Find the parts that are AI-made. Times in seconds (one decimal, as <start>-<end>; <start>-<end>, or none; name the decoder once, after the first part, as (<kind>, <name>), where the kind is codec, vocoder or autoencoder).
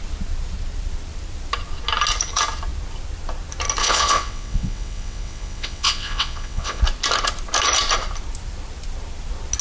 3.8-6.8 (vocoder, WaveNeXt)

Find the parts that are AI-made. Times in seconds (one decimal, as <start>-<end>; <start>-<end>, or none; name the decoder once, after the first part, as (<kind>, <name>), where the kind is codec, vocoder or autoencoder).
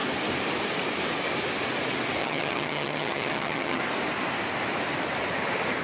2.2-3.8 (vocoder, HiFi-GAN)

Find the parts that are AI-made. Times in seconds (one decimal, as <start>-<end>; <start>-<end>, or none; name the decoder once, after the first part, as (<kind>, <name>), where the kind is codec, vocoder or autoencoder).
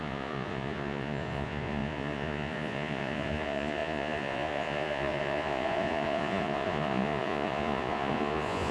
0.0-8.7 (vocoder, Vocos)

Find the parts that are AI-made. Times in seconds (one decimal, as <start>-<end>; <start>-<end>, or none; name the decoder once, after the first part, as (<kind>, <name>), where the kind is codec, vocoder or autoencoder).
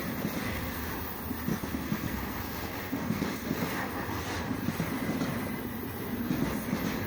0.4-0.9 (codec, SNAC); 1.5-4.2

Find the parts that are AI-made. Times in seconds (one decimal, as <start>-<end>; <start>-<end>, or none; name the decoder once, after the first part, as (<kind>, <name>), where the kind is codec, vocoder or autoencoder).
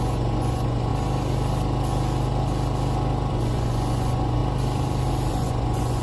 0.0-0.9 (vocoder, Vocos); 3.3-4.4; 5.3-6.0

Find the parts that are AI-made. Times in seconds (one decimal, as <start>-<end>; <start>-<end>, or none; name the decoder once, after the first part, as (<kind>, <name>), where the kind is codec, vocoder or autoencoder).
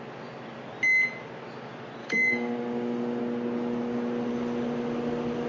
2.0-3.2 (codec, DAC)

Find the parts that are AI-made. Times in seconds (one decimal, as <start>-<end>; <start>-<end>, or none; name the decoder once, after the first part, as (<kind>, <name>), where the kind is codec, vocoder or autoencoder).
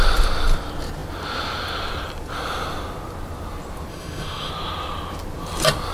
3.9-4.5 (autoencoder, DAC-VAE)